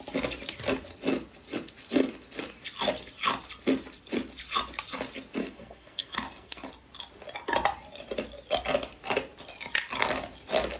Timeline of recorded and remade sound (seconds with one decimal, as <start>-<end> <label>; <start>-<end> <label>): 0.0-5.4 recorded; 5.4-6.7 remade; 6.7-10.8 recorded